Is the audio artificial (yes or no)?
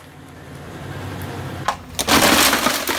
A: no